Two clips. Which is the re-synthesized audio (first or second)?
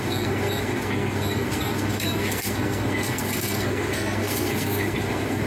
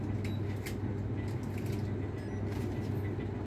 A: first